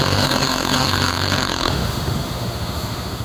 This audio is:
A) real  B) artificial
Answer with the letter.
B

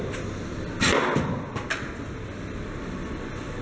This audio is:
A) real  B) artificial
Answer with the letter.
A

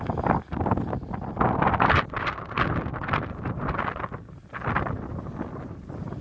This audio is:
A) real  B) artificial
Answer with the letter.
A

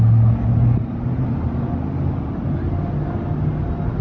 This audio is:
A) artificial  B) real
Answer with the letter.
B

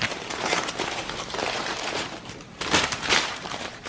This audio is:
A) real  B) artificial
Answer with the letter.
B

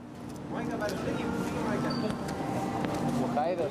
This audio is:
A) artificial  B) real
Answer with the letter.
B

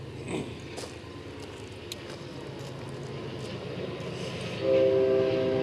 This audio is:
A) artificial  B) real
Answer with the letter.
B